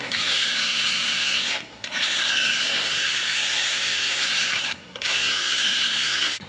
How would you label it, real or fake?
fake